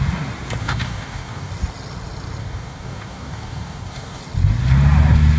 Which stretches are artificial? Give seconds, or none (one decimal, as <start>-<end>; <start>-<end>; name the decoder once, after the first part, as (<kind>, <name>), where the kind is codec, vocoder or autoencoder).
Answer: 0.6-1.5 (codec, DAC); 2.4-4.2